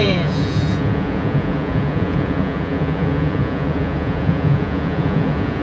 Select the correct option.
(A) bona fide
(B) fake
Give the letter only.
B